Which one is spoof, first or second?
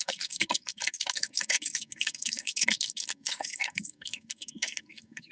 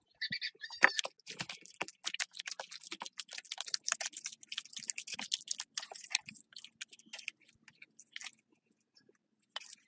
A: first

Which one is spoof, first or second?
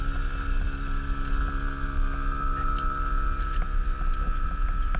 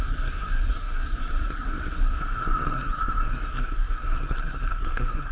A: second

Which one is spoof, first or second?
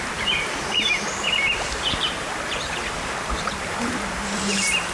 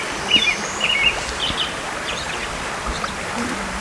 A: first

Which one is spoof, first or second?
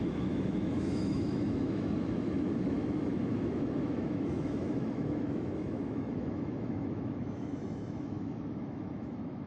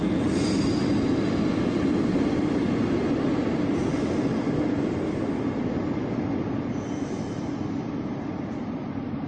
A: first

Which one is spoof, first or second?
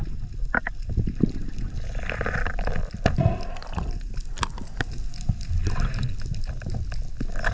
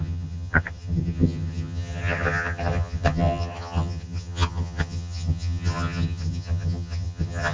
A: second